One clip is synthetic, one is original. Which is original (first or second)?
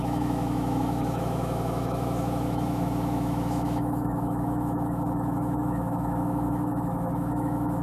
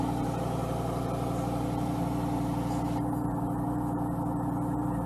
second